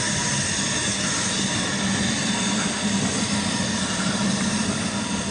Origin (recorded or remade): recorded